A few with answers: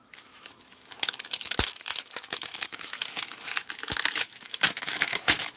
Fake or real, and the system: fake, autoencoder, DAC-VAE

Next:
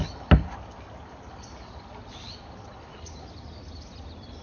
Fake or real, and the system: real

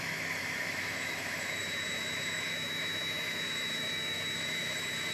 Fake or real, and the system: fake, autoencoder, DAC-VAE